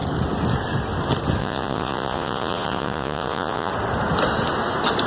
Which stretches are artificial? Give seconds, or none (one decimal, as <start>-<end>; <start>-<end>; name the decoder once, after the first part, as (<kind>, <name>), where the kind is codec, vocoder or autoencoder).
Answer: 1.4-3.7 (vocoder, Vocos)